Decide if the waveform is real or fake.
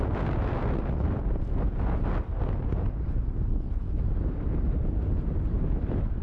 real